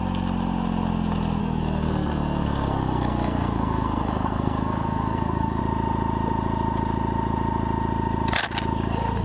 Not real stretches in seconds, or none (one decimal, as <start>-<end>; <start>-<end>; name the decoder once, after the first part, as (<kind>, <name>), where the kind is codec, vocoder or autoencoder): 1.4-5.6 (codec, SNAC)